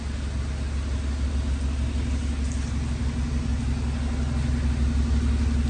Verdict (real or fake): real